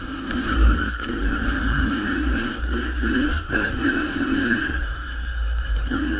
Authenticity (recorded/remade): remade